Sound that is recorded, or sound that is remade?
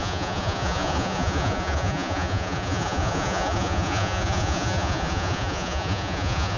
remade